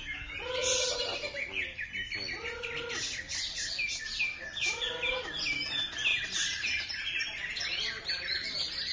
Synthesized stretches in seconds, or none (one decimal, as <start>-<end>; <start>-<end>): 6.1-7.8